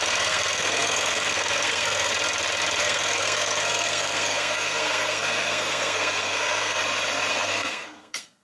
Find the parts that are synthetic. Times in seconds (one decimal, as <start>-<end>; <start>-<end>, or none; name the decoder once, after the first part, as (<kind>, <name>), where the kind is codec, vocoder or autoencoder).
0.0-2.1 (codec, SNAC); 2.8-6.8; 7.3-8.4